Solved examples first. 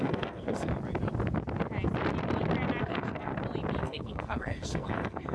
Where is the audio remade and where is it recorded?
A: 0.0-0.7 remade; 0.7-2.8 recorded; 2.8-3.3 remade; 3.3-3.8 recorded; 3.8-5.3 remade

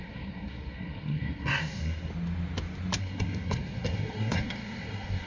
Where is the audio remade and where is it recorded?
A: 0.0-2.1 remade; 2.1-3.0 recorded; 3.0-5.3 remade

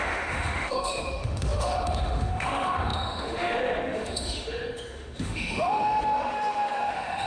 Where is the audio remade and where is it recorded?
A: 0.0-7.3 remade

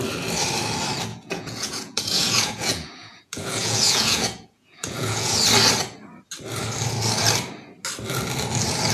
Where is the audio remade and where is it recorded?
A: 0.0-1.1 recorded; 1.1-5.3 remade; 5.3-8.9 recorded